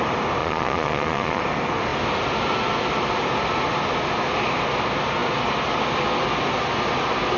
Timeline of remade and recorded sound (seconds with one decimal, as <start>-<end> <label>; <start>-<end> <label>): 0.0-0.4 recorded; 0.4-1.4 remade; 1.4-7.4 recorded